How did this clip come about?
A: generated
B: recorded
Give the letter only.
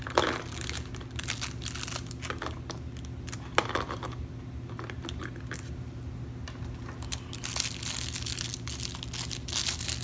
B